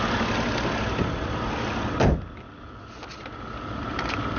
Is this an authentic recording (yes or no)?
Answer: yes